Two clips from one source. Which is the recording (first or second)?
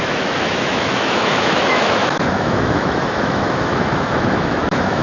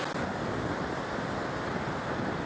second